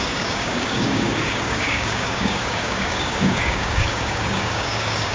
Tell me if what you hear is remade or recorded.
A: remade